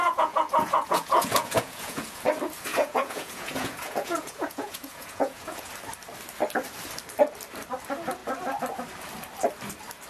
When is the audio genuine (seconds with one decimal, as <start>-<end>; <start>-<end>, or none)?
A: 2.2-2.7; 5.7-10.1